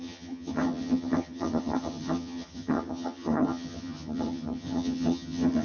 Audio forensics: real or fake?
fake